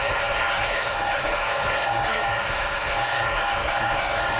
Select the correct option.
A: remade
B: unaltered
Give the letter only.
A